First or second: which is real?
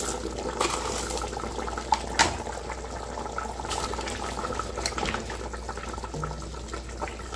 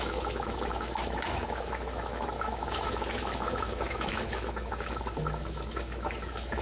first